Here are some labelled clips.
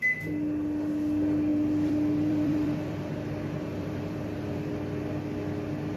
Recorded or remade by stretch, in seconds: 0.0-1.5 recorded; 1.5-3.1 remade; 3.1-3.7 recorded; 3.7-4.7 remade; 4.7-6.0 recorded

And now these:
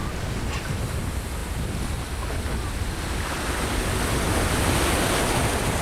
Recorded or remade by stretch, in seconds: 0.0-5.8 recorded